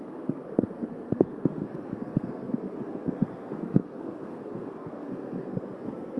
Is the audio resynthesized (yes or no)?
yes